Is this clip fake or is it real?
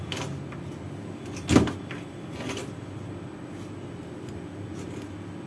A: real